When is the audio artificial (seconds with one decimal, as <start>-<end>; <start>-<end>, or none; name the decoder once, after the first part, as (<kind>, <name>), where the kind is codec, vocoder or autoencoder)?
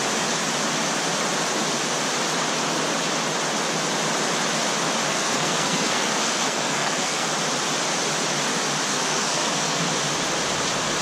5.1-7.3 (codec, SNAC); 8.9-9.8